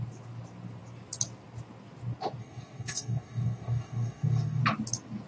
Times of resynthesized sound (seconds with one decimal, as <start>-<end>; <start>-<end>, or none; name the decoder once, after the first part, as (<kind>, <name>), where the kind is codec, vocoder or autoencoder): 2.4-4.6 (codec, DAC)

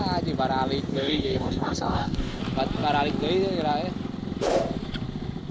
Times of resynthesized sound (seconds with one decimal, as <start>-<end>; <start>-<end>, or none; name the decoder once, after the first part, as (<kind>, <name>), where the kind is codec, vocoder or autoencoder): 0.9-2.4 (codec, DAC)

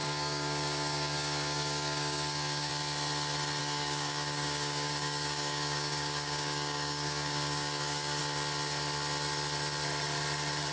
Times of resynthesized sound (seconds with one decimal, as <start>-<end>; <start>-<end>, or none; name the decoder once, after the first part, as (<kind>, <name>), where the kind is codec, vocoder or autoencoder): 0.0-2.7 (codec, DAC); 3.6-8.2

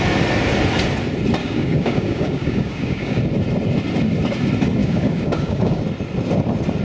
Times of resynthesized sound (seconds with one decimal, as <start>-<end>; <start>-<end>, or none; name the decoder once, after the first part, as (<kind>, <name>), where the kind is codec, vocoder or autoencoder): 1.4-3.2 (codec, DAC); 4.8-5.8